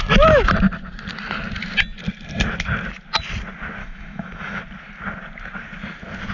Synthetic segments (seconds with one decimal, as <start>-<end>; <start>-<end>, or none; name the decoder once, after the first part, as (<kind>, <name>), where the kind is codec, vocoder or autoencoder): 3.8-4.6 (autoencoder, DAC-VAE)